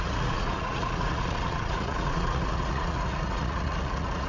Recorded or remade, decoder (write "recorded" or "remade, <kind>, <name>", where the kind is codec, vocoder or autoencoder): remade, vocoder, Vocos